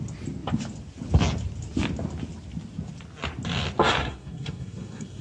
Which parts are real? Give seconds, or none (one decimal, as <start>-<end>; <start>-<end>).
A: 0.0-4.0